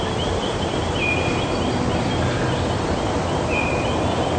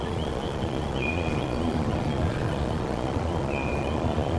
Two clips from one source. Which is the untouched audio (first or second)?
first